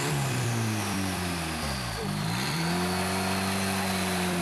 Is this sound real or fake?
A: fake